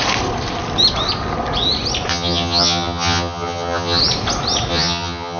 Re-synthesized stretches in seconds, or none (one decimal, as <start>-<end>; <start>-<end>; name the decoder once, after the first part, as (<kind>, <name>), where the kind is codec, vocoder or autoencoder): 2.1-4.0 (vocoder, HiFi-GAN); 4.7-5.4